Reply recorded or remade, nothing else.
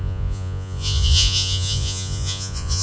remade